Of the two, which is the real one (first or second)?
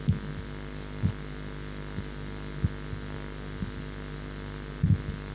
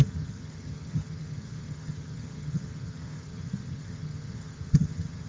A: first